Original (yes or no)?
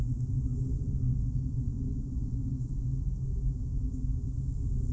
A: yes